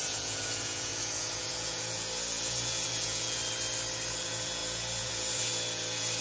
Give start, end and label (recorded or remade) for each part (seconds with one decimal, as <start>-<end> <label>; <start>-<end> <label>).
0.0-3.4 remade; 3.4-4.1 recorded; 4.1-6.2 remade